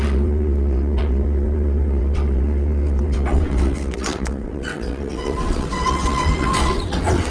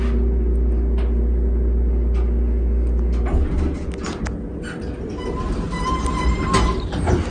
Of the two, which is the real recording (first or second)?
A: second